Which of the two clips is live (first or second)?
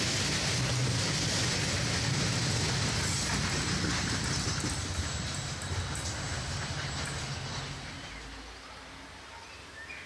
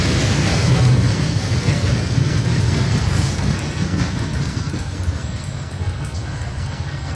first